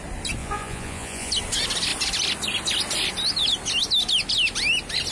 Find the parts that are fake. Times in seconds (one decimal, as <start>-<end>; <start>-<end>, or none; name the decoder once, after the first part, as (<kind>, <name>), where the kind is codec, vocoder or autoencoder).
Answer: 0.4-1.3 (vocoder, Vocos)